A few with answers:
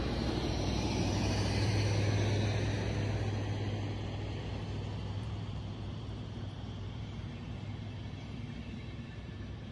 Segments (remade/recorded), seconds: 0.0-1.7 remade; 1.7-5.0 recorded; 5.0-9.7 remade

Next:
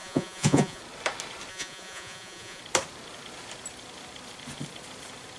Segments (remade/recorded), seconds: 0.0-0.8 remade; 0.8-1.5 recorded; 1.5-2.6 remade; 2.6-5.4 recorded

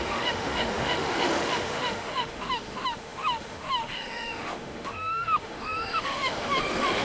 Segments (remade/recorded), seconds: 0.0-7.0 remade

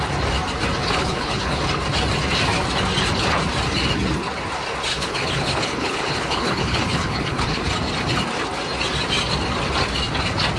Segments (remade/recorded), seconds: 0.0-0.8 recorded; 0.8-1.6 remade; 1.6-4.9 recorded; 4.9-7.7 remade; 7.7-10.6 recorded

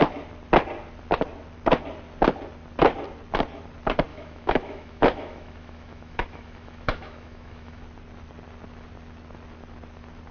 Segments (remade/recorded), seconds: 0.0-4.1 recorded; 4.1-7.8 remade; 7.8-10.3 recorded

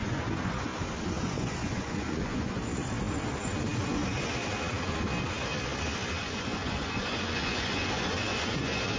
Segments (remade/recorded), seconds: 0.0-0.7 remade; 0.7-1.2 recorded; 1.2-2.6 remade; 2.6-6.2 recorded; 6.2-9.0 remade

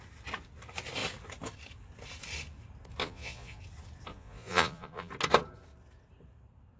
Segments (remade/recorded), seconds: 0.0-3.0 recorded; 3.0-3.6 remade; 3.6-4.1 recorded; 4.1-5.1 remade; 5.1-6.8 recorded